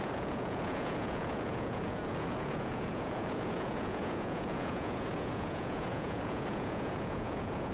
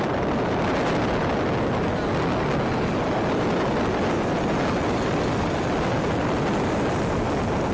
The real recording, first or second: second